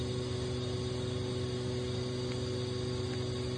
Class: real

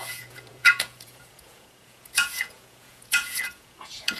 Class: fake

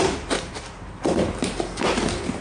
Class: real